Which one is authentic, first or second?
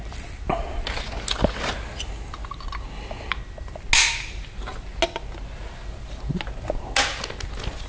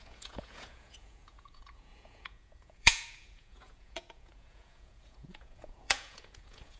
first